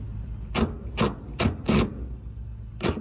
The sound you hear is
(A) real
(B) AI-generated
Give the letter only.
A